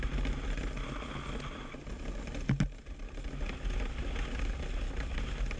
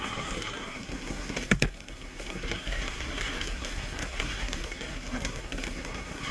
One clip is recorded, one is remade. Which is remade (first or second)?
second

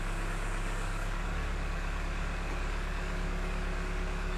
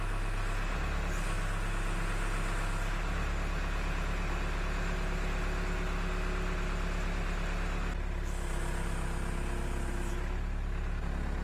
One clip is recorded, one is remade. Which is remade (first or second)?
first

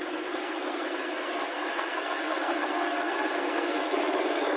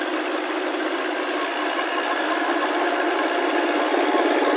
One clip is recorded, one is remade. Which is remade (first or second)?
first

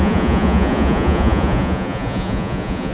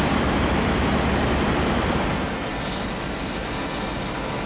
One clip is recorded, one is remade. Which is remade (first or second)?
first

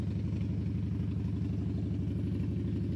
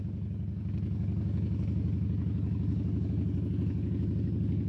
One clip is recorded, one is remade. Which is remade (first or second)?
second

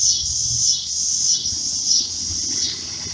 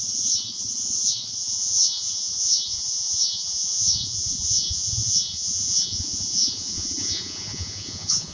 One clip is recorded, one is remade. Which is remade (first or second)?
second